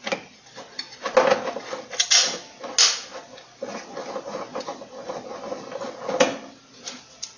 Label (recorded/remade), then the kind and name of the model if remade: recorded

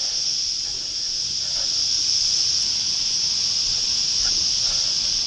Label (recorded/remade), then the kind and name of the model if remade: recorded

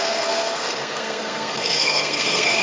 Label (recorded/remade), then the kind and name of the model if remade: remade, codec, SNAC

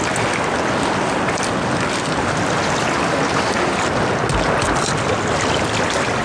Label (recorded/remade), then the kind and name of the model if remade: recorded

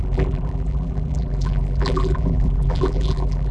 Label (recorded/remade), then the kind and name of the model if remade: remade, vocoder, BigVGAN v2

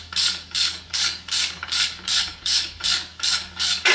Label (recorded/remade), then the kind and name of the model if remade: remade, codec, DAC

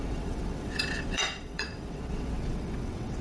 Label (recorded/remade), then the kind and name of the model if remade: remade, vocoder, WaveNeXt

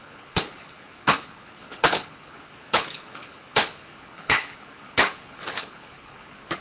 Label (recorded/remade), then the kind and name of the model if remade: remade, codec, HILCodec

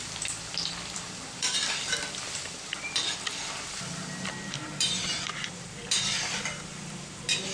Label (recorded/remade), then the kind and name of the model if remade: remade, vocoder, BigVGAN v2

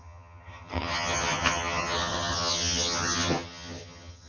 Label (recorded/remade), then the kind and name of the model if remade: remade, vocoder, HiFi-GAN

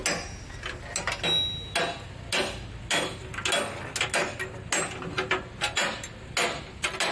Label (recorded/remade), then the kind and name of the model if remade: recorded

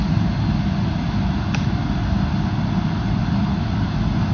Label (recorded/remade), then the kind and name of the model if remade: recorded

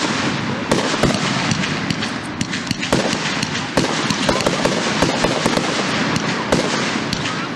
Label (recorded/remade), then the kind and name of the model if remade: recorded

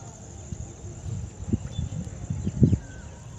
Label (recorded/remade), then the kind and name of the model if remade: recorded